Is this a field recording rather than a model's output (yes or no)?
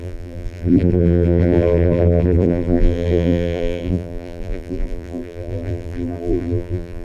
no